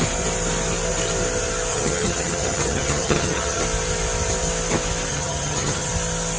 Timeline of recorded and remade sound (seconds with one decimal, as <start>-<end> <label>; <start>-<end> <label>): 0.0-1.7 recorded; 1.7-3.6 remade; 3.6-5.1 recorded; 5.1-5.9 remade; 5.9-6.4 recorded